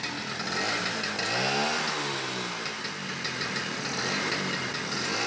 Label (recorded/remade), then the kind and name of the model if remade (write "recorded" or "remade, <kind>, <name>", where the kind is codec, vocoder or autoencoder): recorded